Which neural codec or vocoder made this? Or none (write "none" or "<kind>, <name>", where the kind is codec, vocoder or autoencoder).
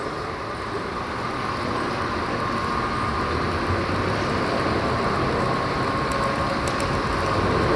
none